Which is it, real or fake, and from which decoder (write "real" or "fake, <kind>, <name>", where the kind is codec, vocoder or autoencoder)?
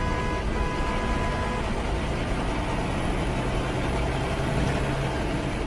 real